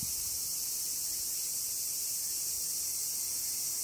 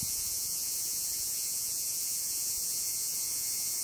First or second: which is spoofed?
second